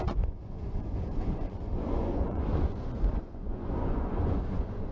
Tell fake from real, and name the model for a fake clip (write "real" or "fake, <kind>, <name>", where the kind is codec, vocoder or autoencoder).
fake, vocoder, Vocos